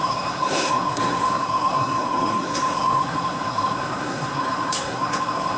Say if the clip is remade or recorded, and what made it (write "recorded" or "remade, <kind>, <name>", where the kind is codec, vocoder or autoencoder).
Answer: remade, codec, SNAC